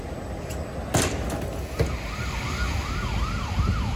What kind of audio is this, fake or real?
real